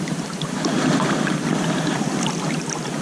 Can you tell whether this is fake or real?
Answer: real